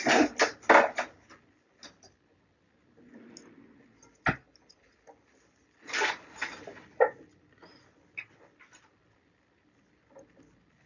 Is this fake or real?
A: real